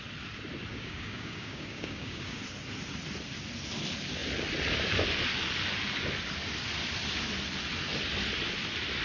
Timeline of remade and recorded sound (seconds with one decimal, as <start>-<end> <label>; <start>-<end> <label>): 0.0-0.7 recorded; 0.7-2.4 remade; 2.4-9.0 recorded